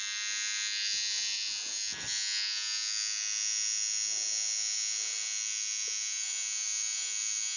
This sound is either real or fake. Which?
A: real